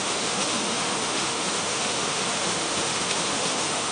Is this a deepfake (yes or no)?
yes